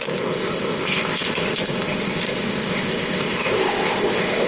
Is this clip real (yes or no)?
no